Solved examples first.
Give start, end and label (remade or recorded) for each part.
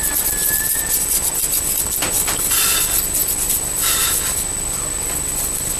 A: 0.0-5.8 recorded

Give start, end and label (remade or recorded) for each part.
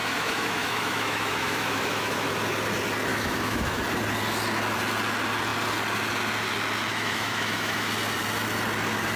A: 0.0-2.3 remade; 2.3-3.1 recorded; 3.1-3.8 remade; 3.8-6.9 recorded; 6.9-7.9 remade; 7.9-9.2 recorded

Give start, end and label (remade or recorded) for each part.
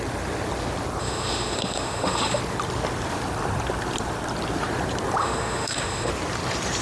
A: 0.0-1.0 recorded; 1.0-2.4 remade; 2.4-5.2 recorded; 5.2-6.1 remade; 6.1-6.8 recorded